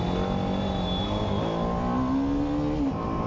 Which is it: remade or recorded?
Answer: recorded